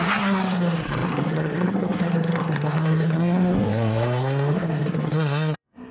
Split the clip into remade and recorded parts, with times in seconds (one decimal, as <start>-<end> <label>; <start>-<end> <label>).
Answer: 0.0-5.9 remade